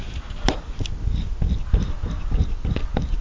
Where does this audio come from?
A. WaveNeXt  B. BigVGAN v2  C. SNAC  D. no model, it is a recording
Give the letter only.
D